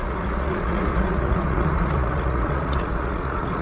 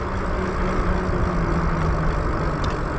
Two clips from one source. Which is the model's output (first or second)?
first